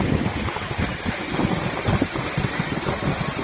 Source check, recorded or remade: recorded